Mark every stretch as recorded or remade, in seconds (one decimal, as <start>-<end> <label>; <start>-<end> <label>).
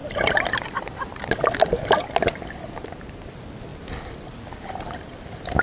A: 0.0-5.6 recorded